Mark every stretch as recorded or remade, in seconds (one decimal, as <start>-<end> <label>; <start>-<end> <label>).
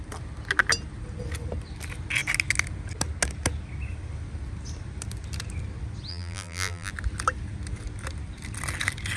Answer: 0.0-6.1 recorded; 6.1-6.9 remade; 6.9-9.2 recorded